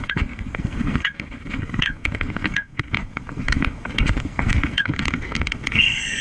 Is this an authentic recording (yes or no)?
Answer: no